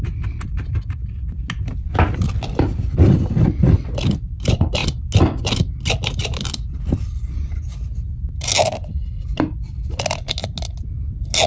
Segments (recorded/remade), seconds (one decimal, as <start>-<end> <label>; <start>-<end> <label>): 0.0-11.5 recorded